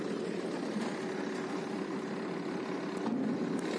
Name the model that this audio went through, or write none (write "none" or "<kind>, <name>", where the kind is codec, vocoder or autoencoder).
none